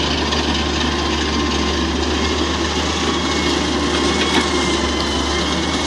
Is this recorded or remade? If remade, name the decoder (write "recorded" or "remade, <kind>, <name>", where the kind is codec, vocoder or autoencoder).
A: recorded